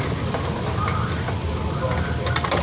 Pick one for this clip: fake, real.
real